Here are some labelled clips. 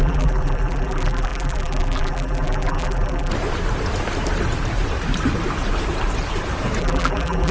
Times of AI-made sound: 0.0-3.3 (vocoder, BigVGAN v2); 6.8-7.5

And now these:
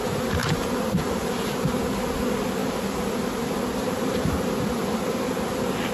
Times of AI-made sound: 0.4-1.8 (vocoder, BigVGAN v2); 2.6-5.3

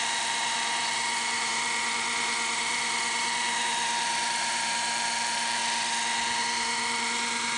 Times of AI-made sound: 0.0-5.6 (vocoder, BigVGAN v2); 6.4-7.6

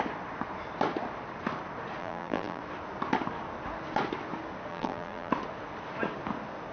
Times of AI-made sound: 2.0-2.6 (vocoder, BigVGAN v2); 4.7-5.3